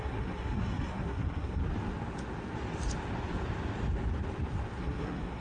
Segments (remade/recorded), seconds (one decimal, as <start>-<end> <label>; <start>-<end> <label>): 0.0-1.6 remade; 1.6-4.8 recorded; 4.8-5.4 remade